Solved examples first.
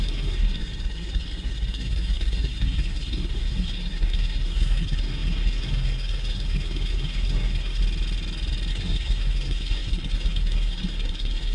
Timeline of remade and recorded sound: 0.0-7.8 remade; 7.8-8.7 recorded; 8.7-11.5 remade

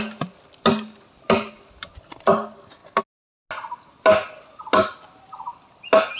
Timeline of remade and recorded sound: 0.0-6.2 recorded

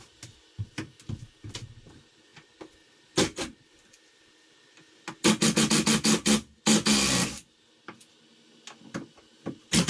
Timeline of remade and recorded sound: 0.0-9.9 recorded

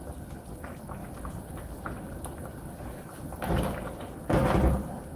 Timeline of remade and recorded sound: 0.0-5.2 recorded

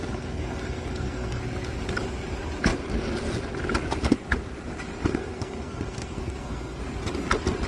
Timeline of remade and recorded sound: 0.0-1.4 remade; 1.4-5.1 recorded; 5.1-6.8 remade; 6.8-7.7 recorded

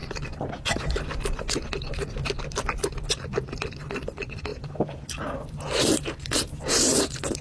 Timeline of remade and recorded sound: 0.0-7.4 recorded

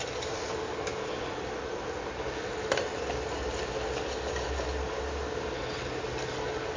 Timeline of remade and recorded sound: 0.0-6.8 recorded

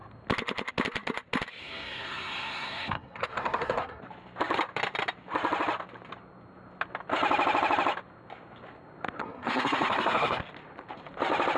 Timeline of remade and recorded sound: 0.0-1.6 recorded; 1.6-4.0 remade; 4.0-9.2 recorded; 9.2-10.4 remade; 10.4-11.6 recorded